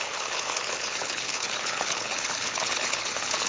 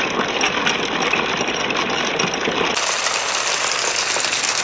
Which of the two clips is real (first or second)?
second